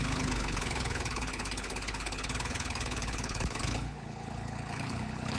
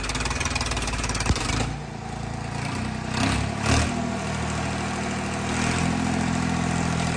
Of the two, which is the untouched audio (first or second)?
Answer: second